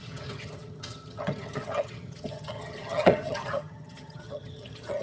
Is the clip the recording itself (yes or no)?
no